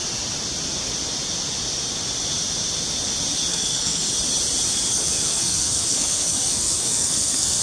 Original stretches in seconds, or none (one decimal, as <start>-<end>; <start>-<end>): 0.0-3.5; 4.1-4.9